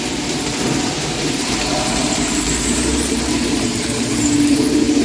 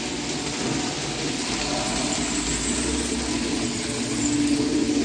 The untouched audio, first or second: second